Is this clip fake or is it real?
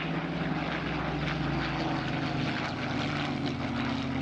real